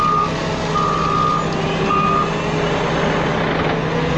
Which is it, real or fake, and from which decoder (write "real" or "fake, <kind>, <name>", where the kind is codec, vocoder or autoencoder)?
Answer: real